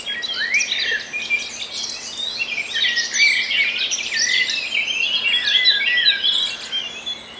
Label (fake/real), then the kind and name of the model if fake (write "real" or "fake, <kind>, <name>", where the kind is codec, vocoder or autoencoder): real